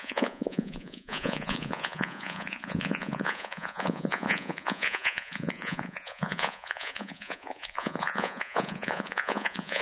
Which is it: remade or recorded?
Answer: remade